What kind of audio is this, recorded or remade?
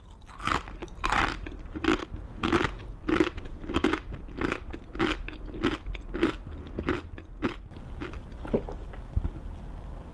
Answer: recorded